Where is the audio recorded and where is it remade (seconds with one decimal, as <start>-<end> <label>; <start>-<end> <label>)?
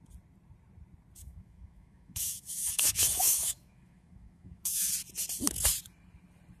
0.0-1.2 recorded; 1.2-4.9 remade; 4.9-6.6 recorded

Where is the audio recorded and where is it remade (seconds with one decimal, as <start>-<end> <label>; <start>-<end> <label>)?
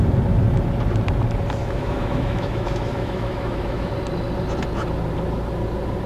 0.0-1.6 recorded; 1.6-3.9 remade; 3.9-6.1 recorded